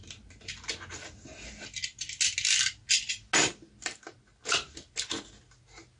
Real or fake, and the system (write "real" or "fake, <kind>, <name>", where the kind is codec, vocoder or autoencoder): real